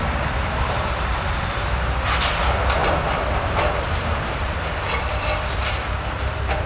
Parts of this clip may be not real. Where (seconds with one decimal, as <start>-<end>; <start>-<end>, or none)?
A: none